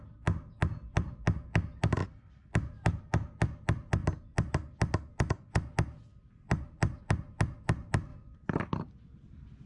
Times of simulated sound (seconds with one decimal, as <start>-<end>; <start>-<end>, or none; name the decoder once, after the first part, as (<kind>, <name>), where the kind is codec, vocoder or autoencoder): 2.0-3.0 (vocoder, BigVGAN v2); 8.1-8.6